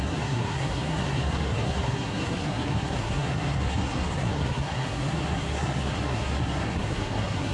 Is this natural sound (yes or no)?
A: no